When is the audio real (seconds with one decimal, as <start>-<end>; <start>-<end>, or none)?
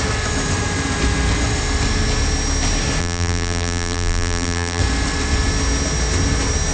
0.0-3.0; 4.8-6.7